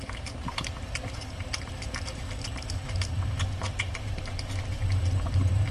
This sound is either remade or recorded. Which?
remade